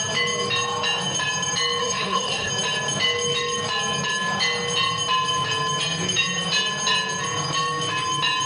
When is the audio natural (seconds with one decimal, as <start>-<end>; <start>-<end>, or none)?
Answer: 0.0-1.8; 2.5-8.5